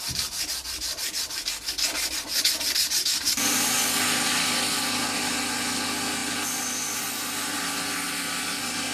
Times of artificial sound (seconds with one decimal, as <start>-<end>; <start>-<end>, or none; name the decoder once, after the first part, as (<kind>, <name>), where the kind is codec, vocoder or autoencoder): none